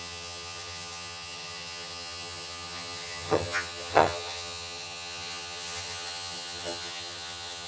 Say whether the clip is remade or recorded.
remade